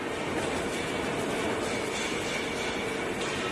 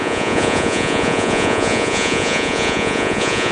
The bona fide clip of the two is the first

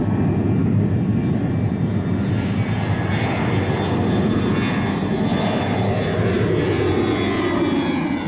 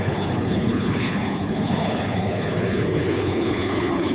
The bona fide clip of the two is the first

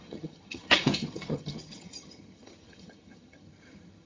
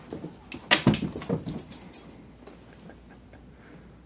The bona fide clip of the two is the second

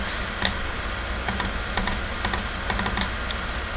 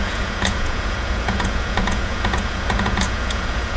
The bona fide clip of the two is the first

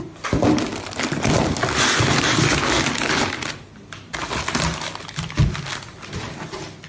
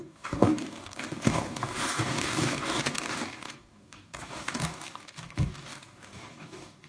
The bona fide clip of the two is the first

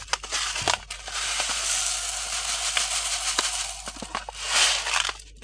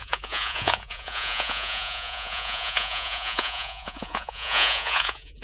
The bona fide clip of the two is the first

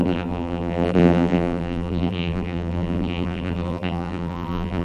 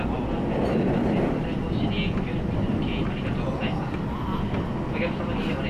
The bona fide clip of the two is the second